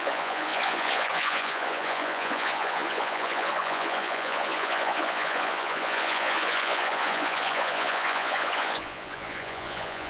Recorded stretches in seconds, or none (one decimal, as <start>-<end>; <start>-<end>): none